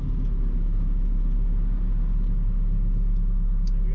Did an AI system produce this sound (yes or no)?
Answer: no